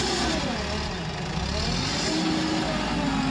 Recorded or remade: recorded